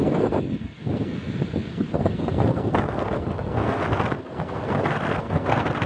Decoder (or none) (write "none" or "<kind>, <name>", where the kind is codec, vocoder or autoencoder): codec, SNAC